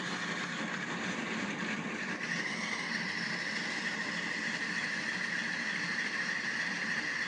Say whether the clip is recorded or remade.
recorded